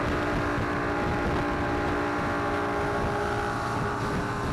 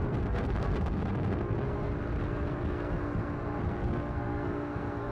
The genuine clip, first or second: first